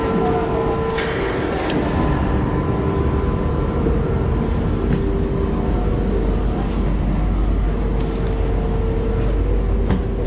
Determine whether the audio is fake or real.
real